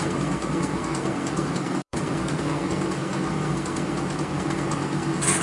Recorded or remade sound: remade